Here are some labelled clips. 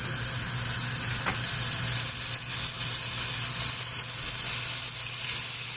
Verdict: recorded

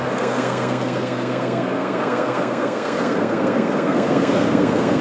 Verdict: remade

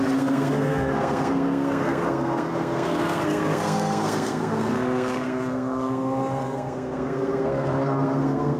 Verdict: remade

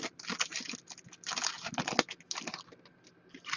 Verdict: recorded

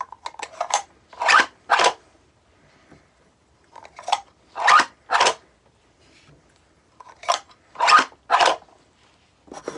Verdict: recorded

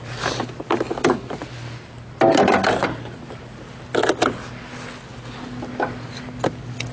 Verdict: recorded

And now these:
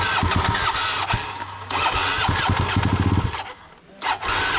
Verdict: recorded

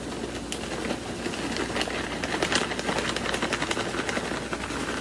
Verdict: recorded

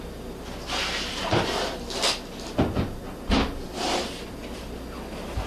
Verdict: recorded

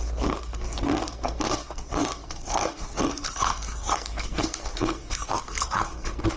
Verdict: remade